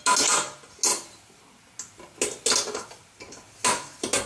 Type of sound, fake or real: real